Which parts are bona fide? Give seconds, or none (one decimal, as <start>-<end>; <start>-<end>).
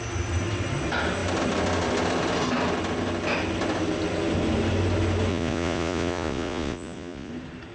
0.0-5.3; 7.3-7.7